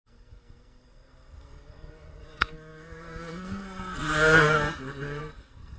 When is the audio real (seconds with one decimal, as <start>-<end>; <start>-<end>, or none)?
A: none